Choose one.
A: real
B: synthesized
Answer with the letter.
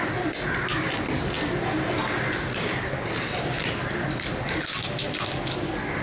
A